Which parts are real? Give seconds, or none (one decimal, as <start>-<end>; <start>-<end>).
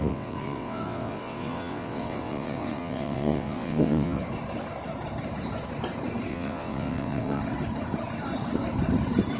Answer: 4.2-6.3; 7.4-9.4